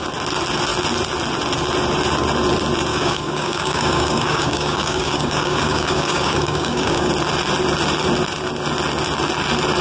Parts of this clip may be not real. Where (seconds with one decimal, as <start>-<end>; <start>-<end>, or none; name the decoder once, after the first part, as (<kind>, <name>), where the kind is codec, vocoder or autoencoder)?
2.9-7.1 (codec, DAC)